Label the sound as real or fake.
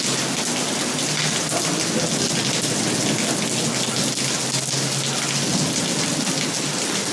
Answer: real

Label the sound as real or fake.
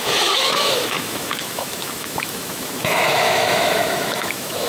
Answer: fake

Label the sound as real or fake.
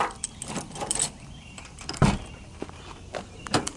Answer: real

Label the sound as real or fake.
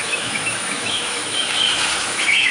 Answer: fake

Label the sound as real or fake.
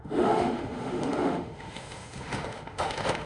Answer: fake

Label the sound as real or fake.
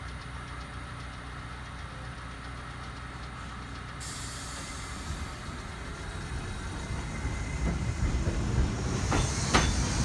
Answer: real